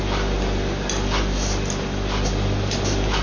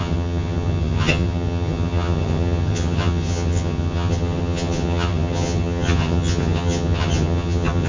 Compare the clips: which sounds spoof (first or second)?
second